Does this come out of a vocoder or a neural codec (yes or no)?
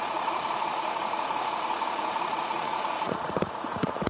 yes